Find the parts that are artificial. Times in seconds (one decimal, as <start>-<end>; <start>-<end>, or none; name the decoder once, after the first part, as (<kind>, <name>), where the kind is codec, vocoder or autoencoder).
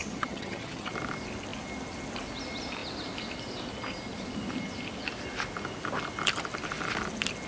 0.0-0.9 (vocoder, HiFi-GAN)